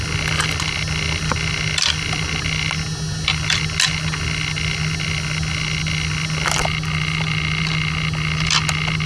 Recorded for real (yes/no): yes